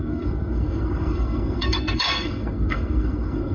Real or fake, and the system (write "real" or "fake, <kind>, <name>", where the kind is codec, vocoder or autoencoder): fake, codec, SNAC